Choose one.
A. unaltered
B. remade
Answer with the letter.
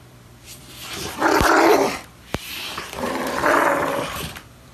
B